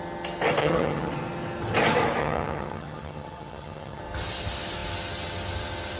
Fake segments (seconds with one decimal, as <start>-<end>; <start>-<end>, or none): 0.6-1.1; 2.2-4.0